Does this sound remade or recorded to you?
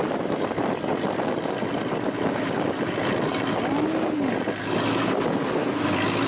recorded